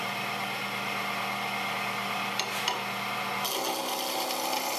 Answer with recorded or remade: recorded